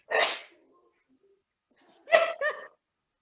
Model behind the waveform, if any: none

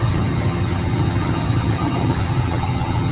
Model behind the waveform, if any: vocoder, HiFi-GAN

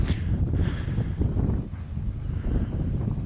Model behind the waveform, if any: none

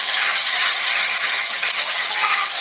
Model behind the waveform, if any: vocoder, HiFi-GAN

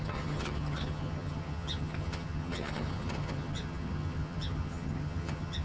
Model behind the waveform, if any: vocoder, HiFi-GAN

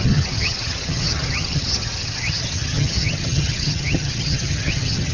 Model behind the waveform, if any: vocoder, HiFi-GAN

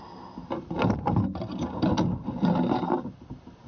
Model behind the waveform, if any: none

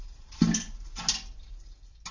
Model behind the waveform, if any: none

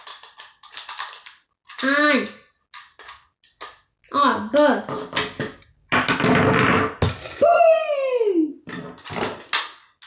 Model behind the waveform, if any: none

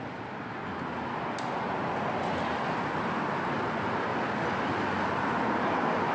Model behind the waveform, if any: none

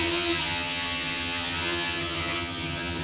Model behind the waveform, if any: vocoder, HiFi-GAN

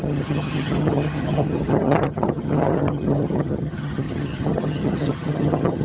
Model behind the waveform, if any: vocoder, HiFi-GAN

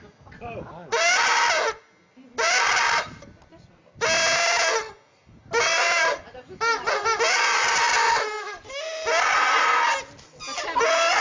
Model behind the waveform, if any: none